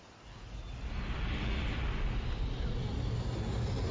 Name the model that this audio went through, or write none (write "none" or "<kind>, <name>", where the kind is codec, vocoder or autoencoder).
none